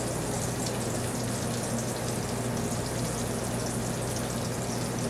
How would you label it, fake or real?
real